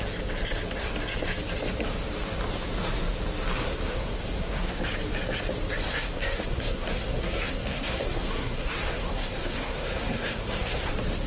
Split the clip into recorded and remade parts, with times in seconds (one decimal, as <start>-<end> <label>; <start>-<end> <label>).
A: 0.0-3.6 recorded; 3.6-4.8 remade; 4.8-5.9 recorded; 5.9-10.9 remade; 10.9-11.3 recorded